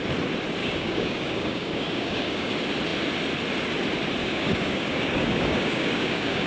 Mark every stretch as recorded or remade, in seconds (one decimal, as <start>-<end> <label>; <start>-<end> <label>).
0.0-0.6 recorded; 0.6-2.5 remade; 2.5-4.2 recorded; 4.2-6.5 remade